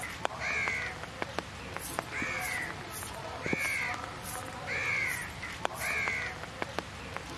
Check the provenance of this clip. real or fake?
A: real